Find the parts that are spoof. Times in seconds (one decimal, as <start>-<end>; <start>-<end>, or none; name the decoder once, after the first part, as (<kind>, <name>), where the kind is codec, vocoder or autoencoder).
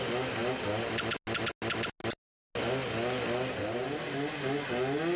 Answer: none